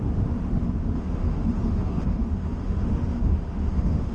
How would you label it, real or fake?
fake